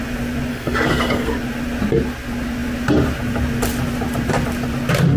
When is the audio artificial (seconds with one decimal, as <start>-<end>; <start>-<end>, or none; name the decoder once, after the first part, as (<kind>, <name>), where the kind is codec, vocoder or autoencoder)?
0.5-1.3 (codec, SNAC)